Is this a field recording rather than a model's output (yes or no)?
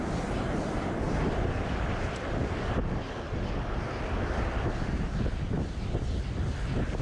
yes